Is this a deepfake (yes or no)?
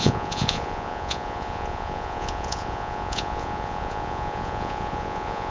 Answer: yes